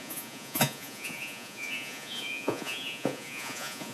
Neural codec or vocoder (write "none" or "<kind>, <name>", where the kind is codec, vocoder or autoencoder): vocoder, Vocos